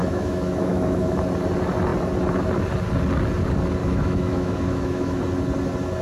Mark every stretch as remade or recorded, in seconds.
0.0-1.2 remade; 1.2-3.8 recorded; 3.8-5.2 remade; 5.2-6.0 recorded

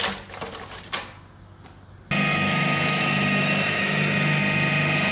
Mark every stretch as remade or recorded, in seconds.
0.0-2.3 recorded; 2.3-4.4 remade; 4.4-5.1 recorded

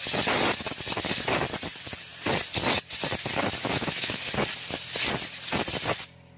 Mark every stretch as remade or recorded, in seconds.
0.0-3.6 recorded; 3.6-4.3 remade; 4.3-6.4 recorded